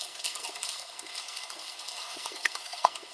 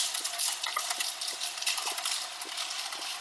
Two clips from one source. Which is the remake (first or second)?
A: first